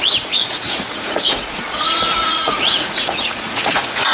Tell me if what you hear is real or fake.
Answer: fake